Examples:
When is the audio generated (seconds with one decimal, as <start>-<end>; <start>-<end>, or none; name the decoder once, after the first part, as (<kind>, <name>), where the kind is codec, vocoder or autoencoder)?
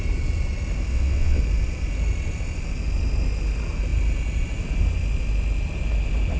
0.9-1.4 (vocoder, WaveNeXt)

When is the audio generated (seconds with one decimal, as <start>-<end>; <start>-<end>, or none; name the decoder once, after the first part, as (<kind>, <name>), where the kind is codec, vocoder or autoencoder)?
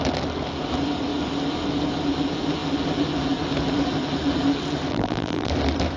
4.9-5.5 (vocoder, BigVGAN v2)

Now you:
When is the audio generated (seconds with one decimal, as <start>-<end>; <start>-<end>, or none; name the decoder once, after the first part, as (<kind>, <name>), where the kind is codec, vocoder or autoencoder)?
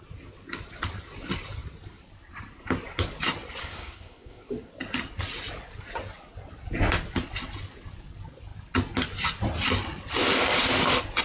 3.6-4.7 (codec, SNAC)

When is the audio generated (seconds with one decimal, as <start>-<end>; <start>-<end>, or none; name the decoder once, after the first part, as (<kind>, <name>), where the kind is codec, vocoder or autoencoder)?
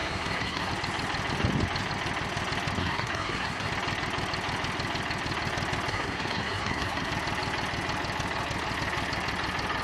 0.0-0.7 (codec, SNAC); 2.8-3.7; 5.9-7.1